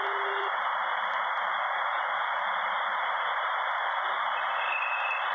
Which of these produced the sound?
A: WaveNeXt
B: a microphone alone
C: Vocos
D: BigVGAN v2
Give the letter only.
B